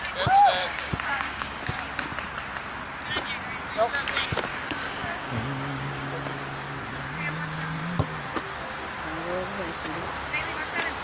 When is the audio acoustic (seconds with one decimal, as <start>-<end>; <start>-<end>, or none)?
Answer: 0.0-0.6; 1.6-4.5; 6.1-11.0